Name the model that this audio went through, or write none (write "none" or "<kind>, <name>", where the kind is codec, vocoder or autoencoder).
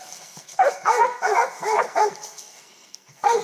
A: codec, SNAC